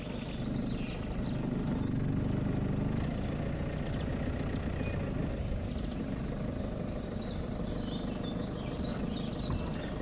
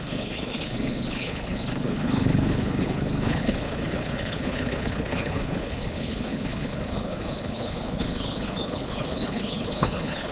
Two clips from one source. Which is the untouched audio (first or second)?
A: first